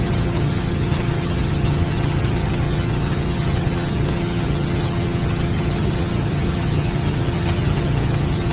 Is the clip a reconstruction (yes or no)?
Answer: yes